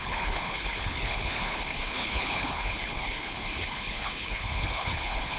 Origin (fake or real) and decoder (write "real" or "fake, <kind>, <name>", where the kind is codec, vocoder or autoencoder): fake, codec, HILCodec